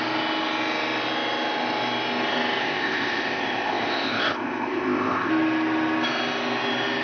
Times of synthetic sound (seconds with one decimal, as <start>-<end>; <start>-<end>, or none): 2.6-5.3